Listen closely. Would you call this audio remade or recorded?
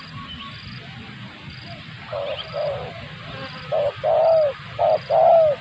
recorded